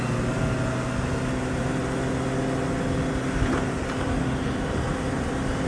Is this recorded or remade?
recorded